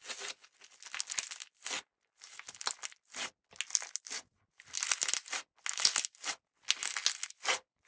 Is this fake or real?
real